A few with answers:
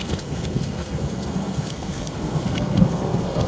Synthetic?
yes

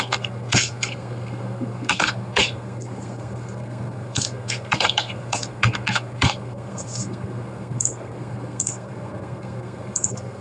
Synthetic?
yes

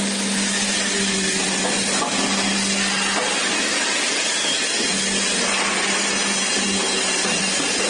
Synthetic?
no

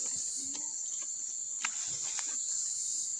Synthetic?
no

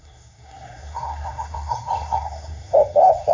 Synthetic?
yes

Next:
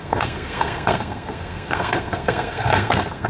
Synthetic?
yes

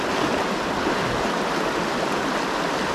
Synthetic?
no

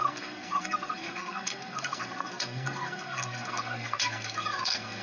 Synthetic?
yes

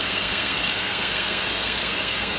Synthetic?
yes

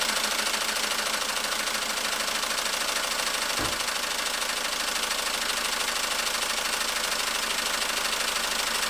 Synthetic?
no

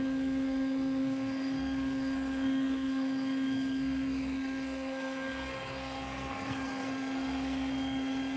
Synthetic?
yes